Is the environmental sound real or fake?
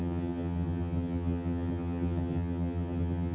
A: fake